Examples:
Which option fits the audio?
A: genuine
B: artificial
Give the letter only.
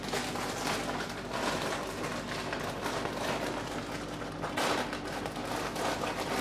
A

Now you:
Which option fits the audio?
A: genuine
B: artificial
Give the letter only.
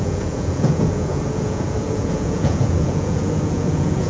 B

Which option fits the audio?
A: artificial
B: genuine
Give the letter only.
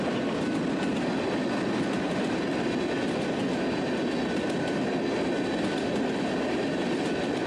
B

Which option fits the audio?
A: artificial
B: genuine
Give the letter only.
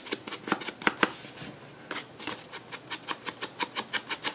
B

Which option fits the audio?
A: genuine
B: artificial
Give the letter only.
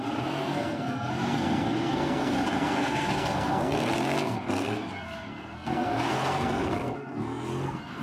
B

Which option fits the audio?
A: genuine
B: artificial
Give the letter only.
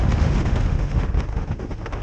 B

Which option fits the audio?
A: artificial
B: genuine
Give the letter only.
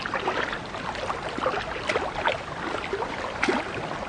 B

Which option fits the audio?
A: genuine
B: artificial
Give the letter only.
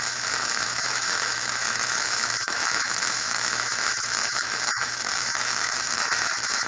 B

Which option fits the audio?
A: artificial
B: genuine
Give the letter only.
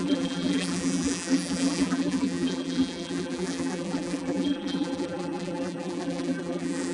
A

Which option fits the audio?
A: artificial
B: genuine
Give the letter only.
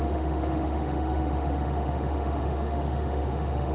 A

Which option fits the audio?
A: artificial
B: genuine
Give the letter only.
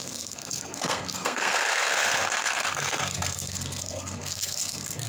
A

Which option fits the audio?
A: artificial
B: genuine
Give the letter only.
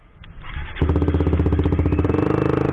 B